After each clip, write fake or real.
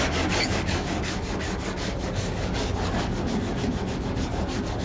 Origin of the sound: fake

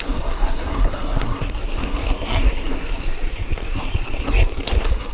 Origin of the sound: fake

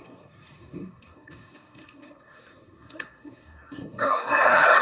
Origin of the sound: fake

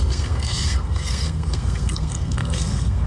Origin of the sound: fake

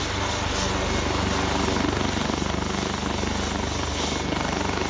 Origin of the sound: real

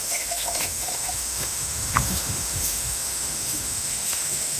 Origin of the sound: fake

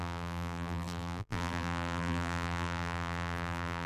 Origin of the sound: fake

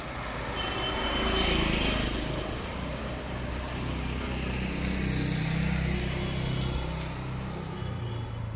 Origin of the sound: real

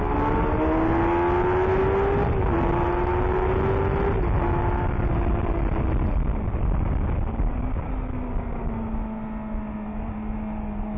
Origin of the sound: real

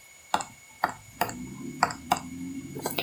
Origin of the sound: real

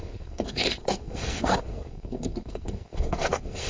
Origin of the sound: fake